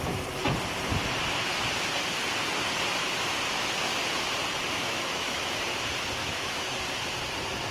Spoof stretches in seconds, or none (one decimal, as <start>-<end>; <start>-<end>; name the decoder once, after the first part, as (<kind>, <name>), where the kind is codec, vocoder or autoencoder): 4.9-5.5 (autoencoder, DAC-VAE); 6.2-6.7